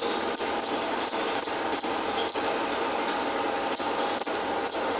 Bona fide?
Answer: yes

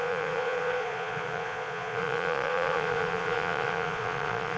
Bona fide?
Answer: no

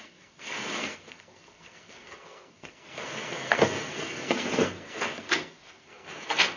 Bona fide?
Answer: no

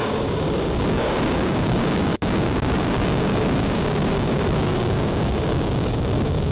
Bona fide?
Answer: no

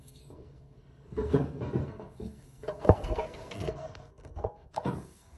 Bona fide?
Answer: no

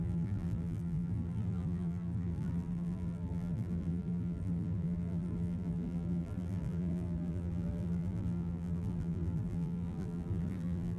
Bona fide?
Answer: no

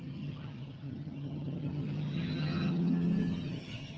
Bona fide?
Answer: no